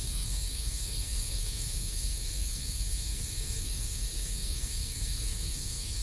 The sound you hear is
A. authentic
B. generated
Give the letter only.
B